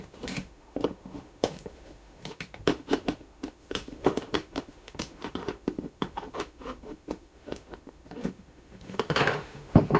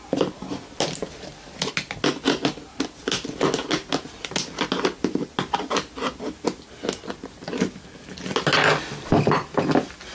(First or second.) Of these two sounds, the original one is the second